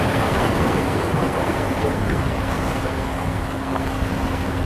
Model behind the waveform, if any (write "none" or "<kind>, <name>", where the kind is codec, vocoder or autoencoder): codec, SNAC